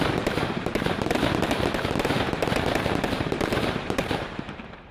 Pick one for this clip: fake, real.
fake